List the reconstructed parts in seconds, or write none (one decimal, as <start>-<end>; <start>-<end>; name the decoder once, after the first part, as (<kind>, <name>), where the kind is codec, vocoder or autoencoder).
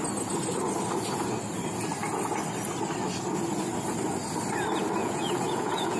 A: 5.0-6.0 (vocoder, Vocos)